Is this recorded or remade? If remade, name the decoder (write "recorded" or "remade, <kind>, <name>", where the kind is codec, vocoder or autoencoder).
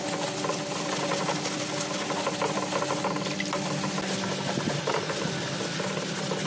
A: recorded